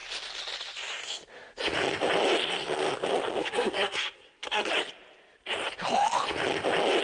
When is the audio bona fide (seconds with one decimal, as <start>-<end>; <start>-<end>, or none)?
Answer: 0.0-3.4; 4.7-7.0